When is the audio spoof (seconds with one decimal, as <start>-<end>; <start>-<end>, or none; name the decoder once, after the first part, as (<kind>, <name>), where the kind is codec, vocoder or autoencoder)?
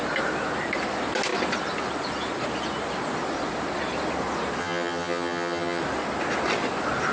4.6-5.8 (vocoder, HiFi-GAN)